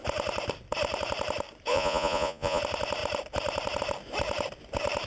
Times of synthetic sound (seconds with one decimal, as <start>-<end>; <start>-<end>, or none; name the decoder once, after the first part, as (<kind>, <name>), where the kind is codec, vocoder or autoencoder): 1.7-2.6 (vocoder, Vocos)